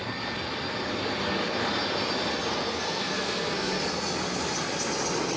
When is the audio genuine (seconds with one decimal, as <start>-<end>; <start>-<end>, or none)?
0.0-2.5; 3.8-5.4